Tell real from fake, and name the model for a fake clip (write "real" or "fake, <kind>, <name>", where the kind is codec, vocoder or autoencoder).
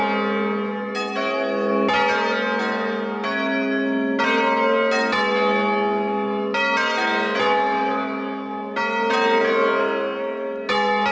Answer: real